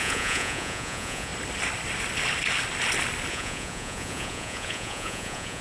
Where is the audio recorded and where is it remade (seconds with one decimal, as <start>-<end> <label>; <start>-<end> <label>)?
0.0-1.3 remade; 1.3-3.3 recorded; 3.3-5.6 remade